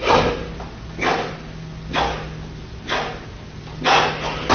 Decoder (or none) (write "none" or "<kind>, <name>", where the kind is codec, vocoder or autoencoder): none